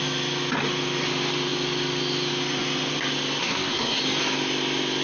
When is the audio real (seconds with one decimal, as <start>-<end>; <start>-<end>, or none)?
0.0-3.4; 4.0-5.0